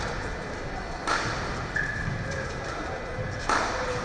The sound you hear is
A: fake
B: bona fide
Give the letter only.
B